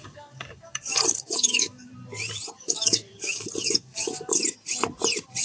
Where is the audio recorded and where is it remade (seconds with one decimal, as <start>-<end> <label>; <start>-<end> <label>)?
0.0-1.9 remade; 1.9-2.6 recorded; 2.6-4.4 remade; 4.4-5.4 recorded